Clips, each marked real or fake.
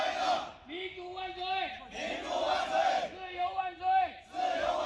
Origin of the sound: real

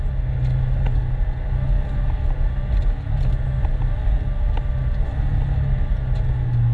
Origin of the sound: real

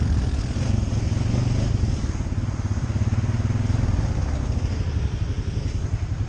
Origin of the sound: real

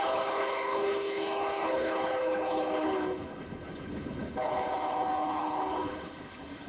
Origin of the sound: fake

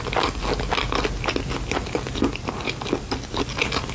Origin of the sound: real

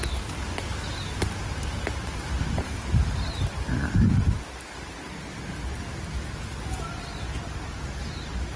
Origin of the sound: real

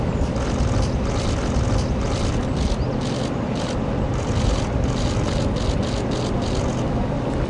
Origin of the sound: real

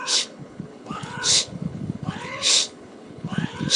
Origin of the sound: fake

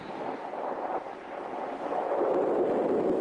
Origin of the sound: real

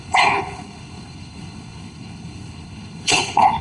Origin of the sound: fake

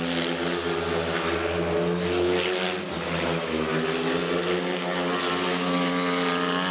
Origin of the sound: real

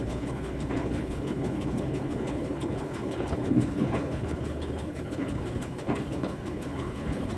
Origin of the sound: fake